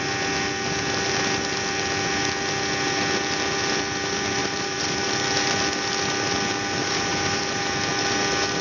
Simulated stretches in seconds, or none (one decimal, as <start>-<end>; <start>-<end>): 4.4-5.0; 6.8-7.6